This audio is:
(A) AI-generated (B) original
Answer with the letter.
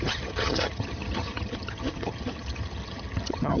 A